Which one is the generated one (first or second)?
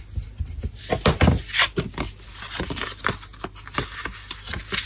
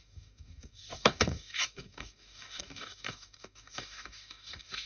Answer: second